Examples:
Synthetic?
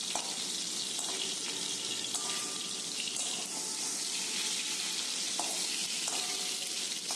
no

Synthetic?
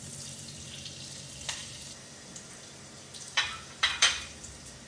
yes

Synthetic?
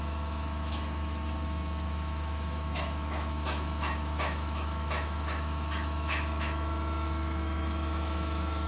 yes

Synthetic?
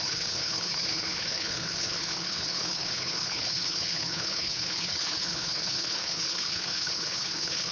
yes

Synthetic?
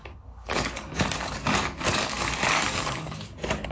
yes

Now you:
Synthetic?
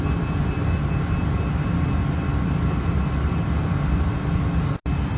no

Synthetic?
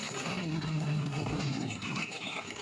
yes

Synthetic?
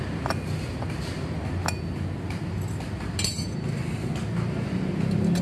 no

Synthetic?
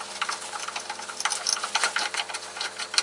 no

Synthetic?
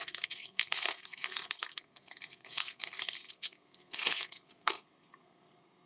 yes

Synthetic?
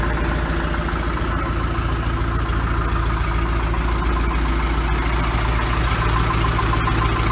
no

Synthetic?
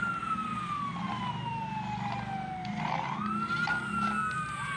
no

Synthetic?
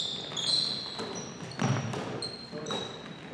no